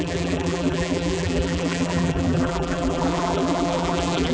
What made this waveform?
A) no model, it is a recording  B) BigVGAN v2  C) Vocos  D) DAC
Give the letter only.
B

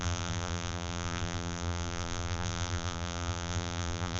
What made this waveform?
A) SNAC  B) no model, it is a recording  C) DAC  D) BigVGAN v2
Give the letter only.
D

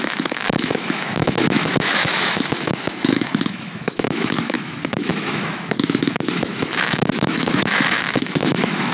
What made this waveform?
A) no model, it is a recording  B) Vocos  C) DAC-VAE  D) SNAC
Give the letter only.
C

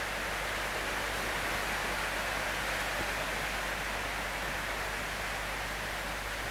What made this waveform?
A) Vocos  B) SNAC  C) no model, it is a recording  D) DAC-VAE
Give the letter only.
C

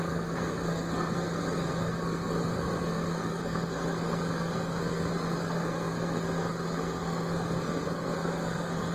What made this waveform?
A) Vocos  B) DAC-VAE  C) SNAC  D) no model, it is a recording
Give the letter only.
C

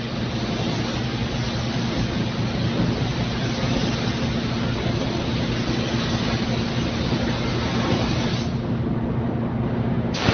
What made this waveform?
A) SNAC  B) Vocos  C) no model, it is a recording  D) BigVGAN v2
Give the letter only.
C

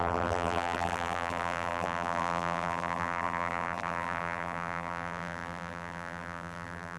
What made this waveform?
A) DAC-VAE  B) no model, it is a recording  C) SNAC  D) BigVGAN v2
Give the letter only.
D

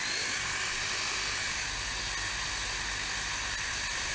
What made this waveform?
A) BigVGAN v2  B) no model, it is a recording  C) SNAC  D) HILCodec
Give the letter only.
B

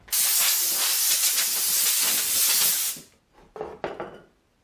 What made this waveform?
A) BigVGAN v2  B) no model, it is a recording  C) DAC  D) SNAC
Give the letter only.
B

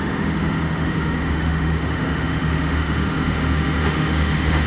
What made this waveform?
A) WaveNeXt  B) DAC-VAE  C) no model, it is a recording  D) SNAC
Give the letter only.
B